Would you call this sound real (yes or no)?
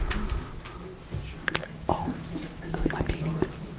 yes